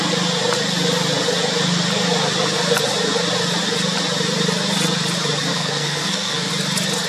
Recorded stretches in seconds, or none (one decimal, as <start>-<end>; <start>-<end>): 0.0-5.5; 6.5-7.1

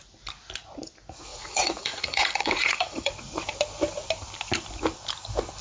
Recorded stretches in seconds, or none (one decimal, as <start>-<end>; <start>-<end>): 0.0-1.3; 3.1-5.6

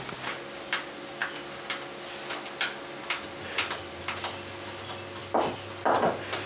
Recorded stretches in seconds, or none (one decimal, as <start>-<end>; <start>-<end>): 0.0-6.5

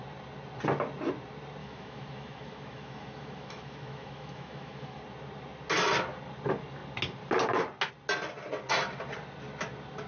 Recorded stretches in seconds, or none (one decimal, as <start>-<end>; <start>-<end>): 0.0-1.6; 5.0-10.1

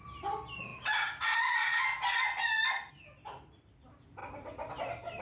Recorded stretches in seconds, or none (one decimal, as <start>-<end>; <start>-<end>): 0.0-5.2

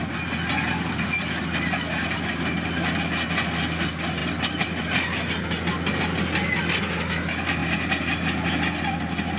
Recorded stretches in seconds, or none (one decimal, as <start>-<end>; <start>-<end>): 0.0-9.4